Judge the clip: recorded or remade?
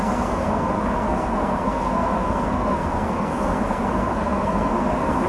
remade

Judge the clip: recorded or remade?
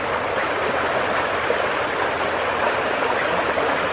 recorded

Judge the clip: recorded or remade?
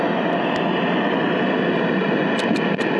recorded